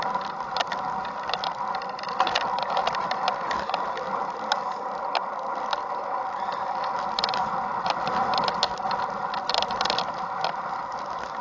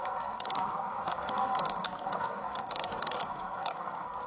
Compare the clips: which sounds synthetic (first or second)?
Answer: second